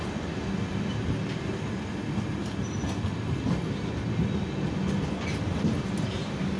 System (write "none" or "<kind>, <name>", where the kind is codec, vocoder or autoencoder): none